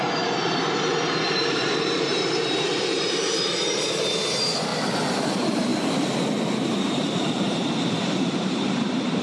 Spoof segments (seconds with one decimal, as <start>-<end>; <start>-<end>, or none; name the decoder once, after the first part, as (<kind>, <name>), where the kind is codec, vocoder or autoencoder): 0.0-4.7 (vocoder, BigVGAN v2); 5.2-5.7; 6.7-9.2